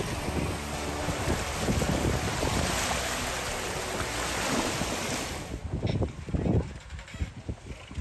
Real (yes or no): yes